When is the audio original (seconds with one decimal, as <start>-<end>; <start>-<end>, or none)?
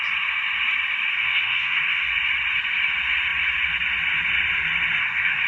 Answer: 0.0-1.1; 2.1-5.0